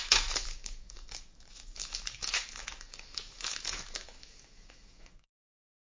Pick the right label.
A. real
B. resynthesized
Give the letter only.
B